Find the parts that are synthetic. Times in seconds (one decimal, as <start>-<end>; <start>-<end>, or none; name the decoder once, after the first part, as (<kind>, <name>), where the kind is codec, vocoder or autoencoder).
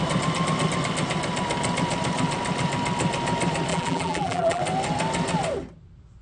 3.7-4.6 (vocoder, BigVGAN v2)